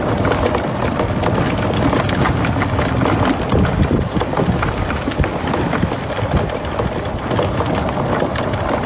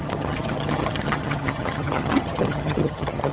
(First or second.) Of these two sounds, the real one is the first